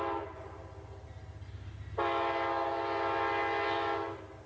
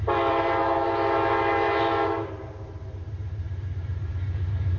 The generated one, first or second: second